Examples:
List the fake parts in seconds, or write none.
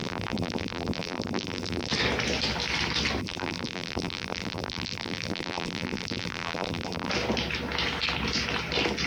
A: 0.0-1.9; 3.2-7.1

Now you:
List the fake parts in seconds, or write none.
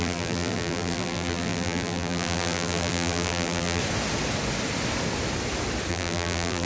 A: 0.0-3.8; 5.9-6.7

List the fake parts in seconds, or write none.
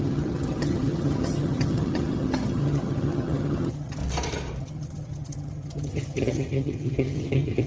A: 0.0-4.0; 4.6-7.7